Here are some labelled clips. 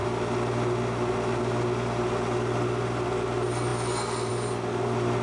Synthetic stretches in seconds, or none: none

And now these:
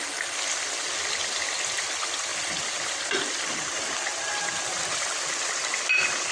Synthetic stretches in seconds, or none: none

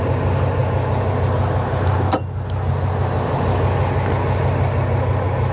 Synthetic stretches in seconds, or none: none

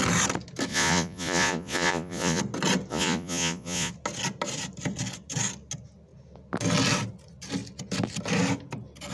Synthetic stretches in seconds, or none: 0.7-2.4 (vocoder, Vocos); 2.9-3.9